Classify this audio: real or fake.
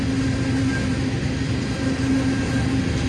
real